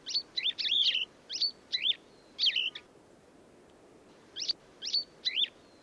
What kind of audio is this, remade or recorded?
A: recorded